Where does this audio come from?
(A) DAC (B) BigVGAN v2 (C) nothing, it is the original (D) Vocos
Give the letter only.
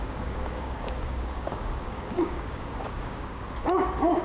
A